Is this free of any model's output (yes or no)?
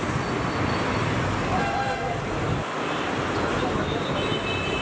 yes